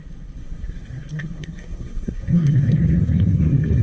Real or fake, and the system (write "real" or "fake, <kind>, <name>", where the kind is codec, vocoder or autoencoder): fake, codec, SNAC